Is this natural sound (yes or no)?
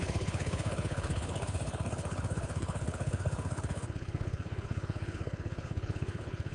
no